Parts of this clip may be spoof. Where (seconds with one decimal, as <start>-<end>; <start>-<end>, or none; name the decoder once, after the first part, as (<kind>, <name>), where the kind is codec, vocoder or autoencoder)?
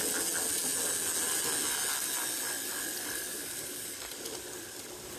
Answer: none